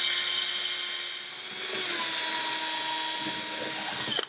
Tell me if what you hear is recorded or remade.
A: recorded